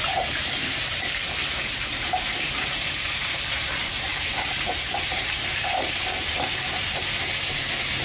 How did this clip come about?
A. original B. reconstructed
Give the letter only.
B